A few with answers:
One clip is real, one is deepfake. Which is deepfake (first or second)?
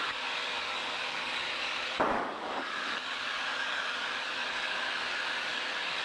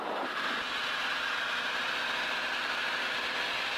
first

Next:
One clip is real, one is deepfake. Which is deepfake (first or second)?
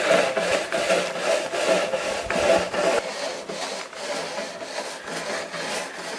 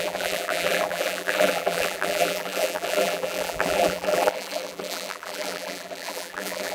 second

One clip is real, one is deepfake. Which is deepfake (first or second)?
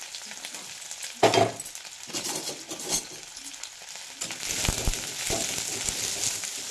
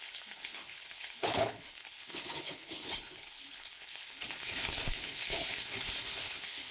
second